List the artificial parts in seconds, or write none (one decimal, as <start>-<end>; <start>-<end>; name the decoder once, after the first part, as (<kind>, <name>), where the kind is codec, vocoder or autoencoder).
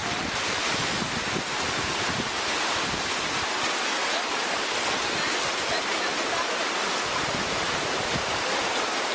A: 1.9-3.1 (vocoder, BigVGAN v2); 7.5-9.1